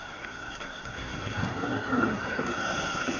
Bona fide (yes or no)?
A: no